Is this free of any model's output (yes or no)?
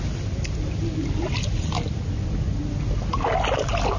yes